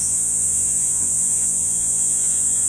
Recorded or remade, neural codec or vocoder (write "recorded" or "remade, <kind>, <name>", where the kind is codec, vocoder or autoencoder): remade, vocoder, Vocos